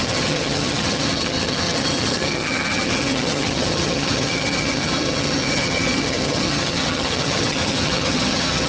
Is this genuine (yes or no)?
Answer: no